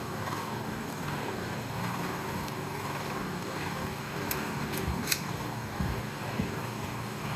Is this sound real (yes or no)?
no